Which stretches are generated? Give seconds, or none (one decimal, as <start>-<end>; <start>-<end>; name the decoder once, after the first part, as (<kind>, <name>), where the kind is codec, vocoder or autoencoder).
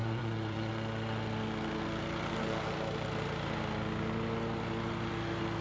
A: 0.0-0.7 (vocoder, Vocos)